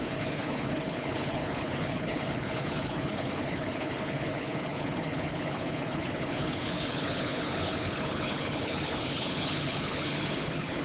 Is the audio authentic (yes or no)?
no